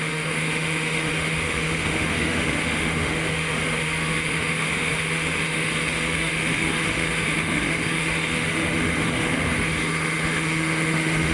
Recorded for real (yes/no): no